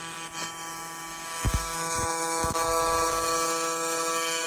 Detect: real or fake fake